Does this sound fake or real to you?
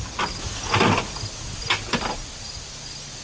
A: real